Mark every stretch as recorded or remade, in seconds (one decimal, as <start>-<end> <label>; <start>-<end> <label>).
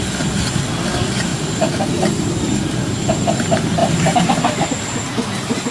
0.0-1.3 recorded; 1.3-2.4 remade; 2.4-3.8 recorded; 3.8-4.3 remade; 4.3-5.7 recorded